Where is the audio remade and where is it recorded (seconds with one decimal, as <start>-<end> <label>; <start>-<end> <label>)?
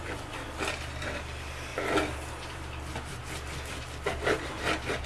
0.0-5.1 recorded